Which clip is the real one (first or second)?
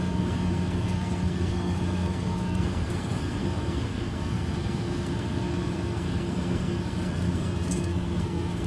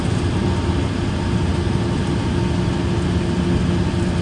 second